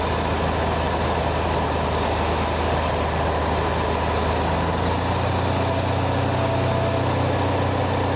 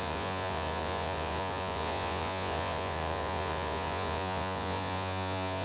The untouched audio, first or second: first